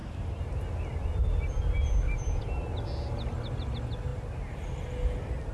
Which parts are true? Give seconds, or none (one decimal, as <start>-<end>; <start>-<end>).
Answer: 0.0-5.5